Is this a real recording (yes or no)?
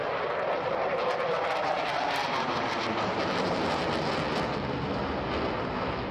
yes